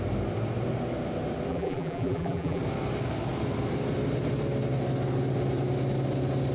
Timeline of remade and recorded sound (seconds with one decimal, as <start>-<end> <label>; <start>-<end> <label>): 0.0-1.5 recorded; 1.5-2.6 remade; 2.6-6.5 recorded